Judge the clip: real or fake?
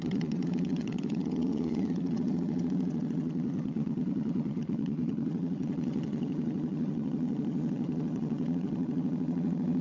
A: fake